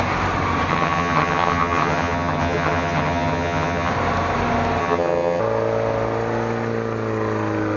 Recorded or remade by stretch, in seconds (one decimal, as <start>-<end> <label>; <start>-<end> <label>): 0.0-0.7 recorded; 0.7-3.9 remade; 3.9-4.8 recorded; 4.8-5.4 remade; 5.4-7.8 recorded